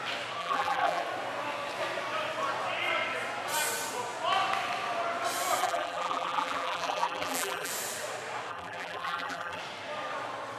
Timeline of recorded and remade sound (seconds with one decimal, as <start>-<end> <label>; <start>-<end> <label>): 0.0-0.4 recorded; 0.4-1.0 remade; 1.0-5.6 recorded; 5.6-7.7 remade; 7.7-8.5 recorded; 8.5-9.6 remade; 9.6-10.6 recorded